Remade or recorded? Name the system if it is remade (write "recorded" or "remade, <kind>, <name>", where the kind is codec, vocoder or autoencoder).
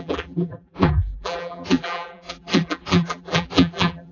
remade, vocoder, BigVGAN v2